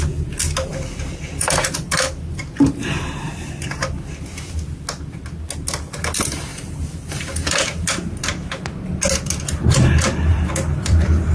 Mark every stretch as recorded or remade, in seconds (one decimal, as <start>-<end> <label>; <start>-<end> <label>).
0.0-0.7 recorded; 0.7-3.5 remade; 3.5-6.5 recorded; 6.5-8.6 remade; 8.6-10.3 recorded; 10.3-11.3 remade